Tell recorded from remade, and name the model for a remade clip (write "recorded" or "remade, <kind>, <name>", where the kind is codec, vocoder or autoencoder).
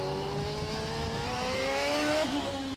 remade, autoencoder, DAC-VAE